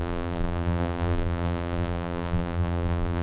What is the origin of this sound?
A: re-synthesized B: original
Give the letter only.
A